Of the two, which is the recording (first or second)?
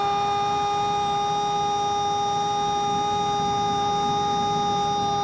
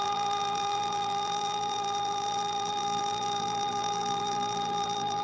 first